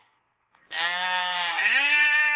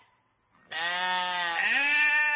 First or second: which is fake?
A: first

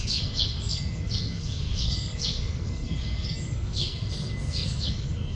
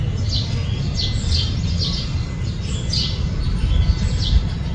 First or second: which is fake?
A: first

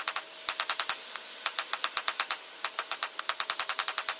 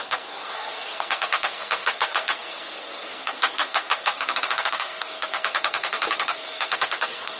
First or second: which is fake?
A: second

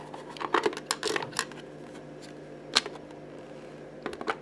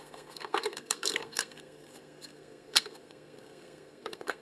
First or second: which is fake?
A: second